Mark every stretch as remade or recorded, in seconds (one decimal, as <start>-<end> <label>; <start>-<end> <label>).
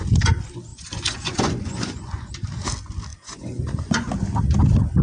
0.0-0.7 recorded; 0.7-2.3 remade; 2.3-3.1 recorded; 3.1-4.1 remade; 4.1-5.0 recorded